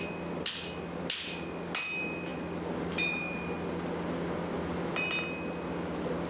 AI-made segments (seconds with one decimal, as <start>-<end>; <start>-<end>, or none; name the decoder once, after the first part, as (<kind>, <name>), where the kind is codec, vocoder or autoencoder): none